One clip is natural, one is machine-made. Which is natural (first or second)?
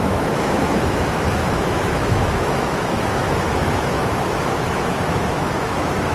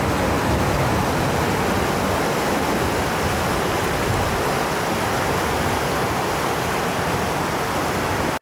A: second